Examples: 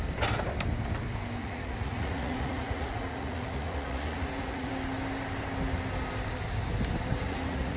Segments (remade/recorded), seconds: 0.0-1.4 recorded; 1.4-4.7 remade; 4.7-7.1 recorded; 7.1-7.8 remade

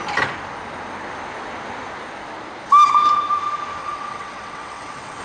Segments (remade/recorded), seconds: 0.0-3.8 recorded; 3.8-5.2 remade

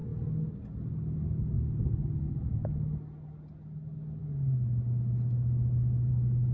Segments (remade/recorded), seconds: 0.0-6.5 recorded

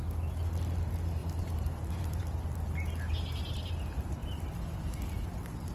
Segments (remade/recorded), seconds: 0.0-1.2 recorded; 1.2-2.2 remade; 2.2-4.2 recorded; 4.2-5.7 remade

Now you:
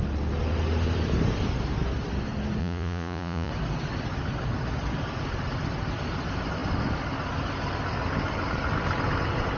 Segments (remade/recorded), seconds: 0.0-2.6 recorded; 2.6-3.5 remade; 3.5-9.6 recorded

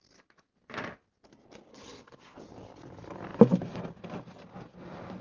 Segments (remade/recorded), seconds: 0.0-1.7 recorded; 1.7-2.2 remade; 2.2-5.2 recorded

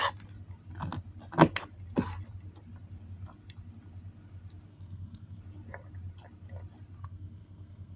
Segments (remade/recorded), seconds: 0.0-4.7 recorded; 4.7-5.4 remade; 5.4-7.0 recorded; 7.0-8.0 remade

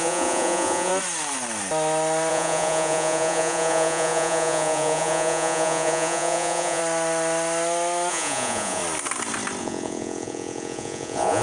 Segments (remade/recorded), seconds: 0.0-0.9 remade; 0.9-2.3 recorded; 2.3-6.8 remade; 6.8-8.1 recorded; 8.1-8.8 remade; 8.8-9.6 recorded; 9.6-11.4 remade